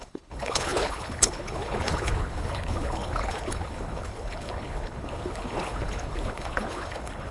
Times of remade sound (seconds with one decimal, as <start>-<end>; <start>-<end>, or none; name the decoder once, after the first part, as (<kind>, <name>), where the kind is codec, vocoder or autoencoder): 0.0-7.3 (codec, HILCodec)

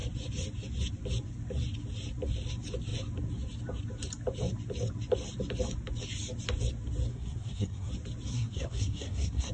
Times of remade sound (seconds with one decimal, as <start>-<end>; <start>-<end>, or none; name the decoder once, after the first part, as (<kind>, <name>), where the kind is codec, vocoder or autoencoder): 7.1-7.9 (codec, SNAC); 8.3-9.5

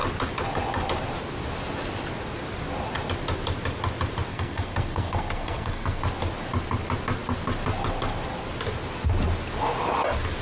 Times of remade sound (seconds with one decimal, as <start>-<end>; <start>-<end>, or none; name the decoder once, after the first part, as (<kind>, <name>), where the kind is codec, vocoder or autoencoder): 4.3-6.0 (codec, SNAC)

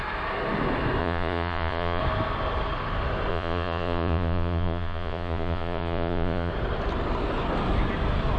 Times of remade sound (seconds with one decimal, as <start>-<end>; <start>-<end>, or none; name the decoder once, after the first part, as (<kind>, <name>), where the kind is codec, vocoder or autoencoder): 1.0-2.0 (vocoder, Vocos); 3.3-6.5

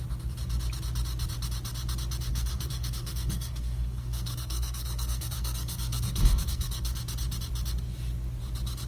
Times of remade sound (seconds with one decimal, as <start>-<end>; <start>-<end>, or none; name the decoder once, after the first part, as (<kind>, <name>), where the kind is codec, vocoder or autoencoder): 2.3-7.0 (codec, SNAC)